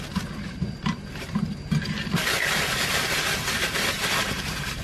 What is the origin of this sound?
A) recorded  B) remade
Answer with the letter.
B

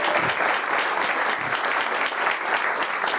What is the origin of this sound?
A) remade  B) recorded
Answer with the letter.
B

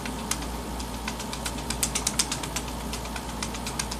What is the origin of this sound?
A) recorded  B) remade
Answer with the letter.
A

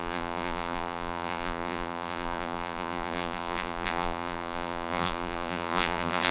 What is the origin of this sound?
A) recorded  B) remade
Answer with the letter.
B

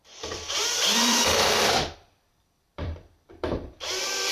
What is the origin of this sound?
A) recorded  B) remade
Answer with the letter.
B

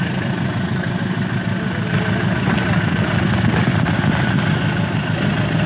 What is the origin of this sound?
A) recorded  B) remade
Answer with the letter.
A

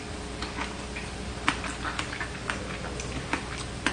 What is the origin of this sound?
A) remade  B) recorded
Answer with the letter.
A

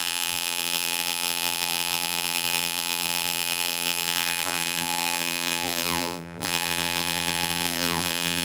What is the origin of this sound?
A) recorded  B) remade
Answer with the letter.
B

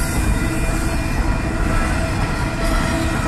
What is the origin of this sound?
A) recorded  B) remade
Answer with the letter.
A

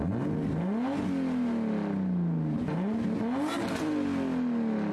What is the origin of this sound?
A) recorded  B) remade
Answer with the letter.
A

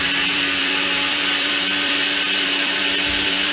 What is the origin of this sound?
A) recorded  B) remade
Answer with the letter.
B